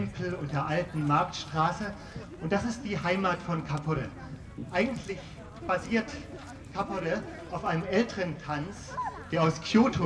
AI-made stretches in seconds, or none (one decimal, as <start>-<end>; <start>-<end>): none

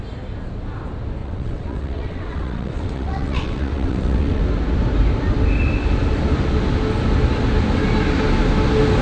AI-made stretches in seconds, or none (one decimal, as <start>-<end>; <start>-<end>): 1.2-4.4

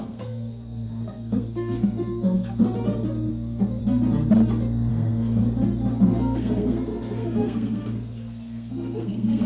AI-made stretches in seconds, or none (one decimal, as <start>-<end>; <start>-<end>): 0.0-2.6; 3.3-3.8; 4.9-5.4; 5.9-9.5

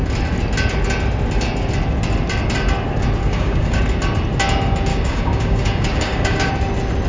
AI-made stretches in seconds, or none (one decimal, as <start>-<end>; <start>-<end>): 3.2-3.8; 4.9-6.5

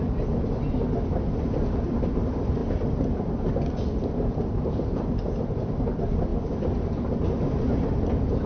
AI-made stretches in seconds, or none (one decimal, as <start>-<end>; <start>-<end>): none

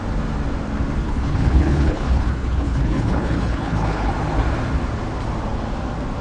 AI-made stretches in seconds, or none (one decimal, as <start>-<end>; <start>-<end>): 1.0-4.1

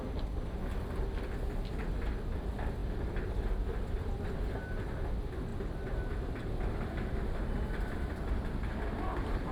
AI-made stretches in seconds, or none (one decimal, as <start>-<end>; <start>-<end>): none